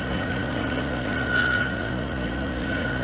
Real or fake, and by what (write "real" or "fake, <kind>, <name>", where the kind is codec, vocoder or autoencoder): fake, vocoder, Vocos